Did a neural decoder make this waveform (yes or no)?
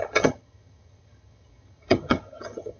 yes